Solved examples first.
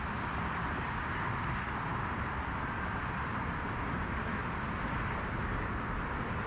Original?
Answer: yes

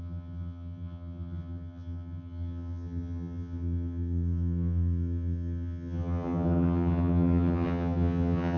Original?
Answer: no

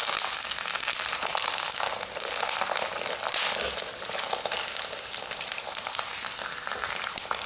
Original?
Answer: yes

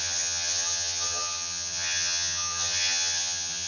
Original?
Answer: no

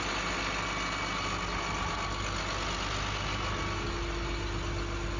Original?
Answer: yes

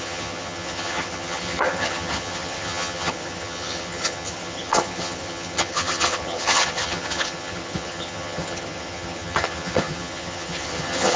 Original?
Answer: no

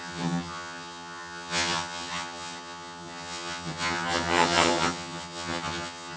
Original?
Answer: no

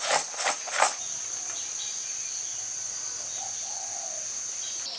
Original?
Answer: yes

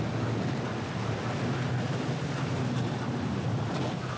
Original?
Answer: yes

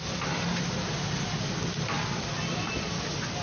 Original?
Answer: yes